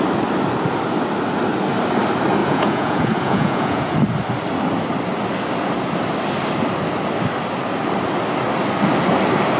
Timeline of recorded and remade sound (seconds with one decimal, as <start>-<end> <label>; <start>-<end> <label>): 0.0-2.4 recorded; 2.4-3.9 remade; 3.9-9.6 recorded